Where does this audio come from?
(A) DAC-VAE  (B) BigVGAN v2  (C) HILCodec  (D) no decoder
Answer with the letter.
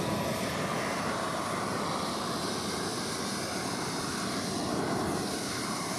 D